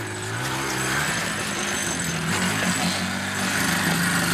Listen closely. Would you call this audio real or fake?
real